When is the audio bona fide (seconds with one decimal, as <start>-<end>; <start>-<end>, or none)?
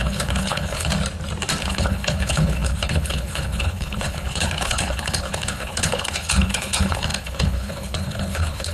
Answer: 0.9-1.6